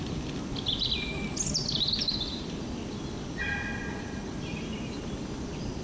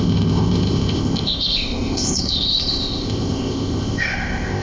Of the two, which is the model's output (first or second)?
second